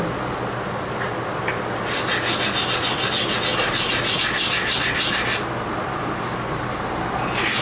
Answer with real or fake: real